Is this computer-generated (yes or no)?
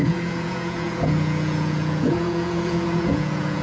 yes